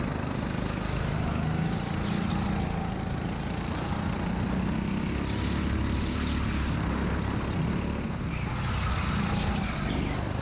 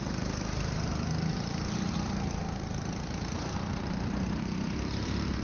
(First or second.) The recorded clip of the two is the first